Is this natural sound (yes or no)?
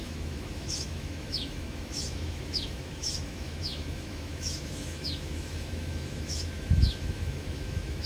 no